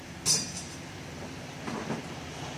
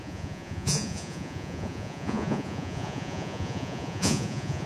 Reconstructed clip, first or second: second